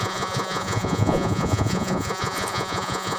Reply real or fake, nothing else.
fake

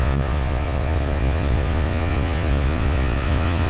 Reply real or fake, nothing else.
fake